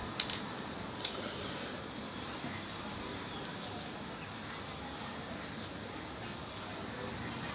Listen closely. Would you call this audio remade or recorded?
recorded